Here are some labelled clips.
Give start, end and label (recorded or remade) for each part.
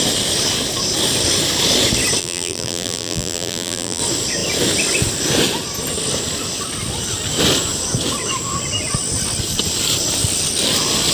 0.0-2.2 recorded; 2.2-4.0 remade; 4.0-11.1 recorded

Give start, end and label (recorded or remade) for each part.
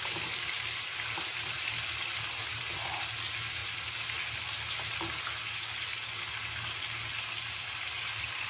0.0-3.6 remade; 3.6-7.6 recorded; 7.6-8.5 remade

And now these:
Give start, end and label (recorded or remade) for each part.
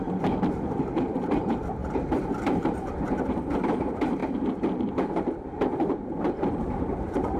0.0-7.4 remade